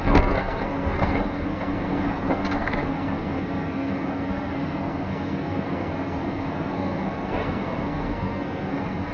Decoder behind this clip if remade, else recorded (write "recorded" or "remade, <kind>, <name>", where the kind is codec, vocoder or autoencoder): remade, codec, SNAC